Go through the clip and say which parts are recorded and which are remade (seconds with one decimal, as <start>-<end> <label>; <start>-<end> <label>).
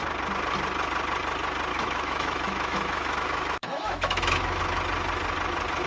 0.0-1.7 recorded; 1.7-4.6 remade; 4.6-5.9 recorded